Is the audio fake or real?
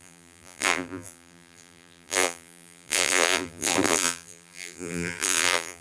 fake